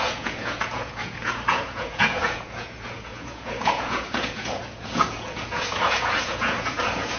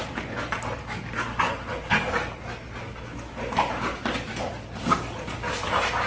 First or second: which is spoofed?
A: first